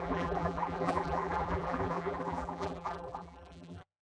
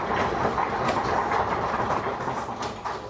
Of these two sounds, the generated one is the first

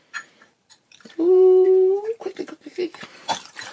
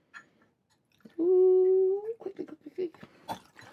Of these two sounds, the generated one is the first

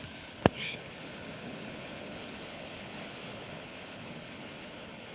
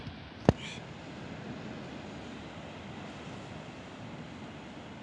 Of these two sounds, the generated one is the first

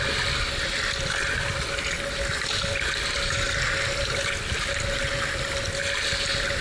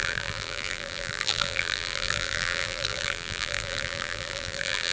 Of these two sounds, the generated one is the second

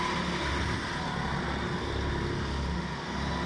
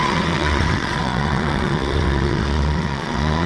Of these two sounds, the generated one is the second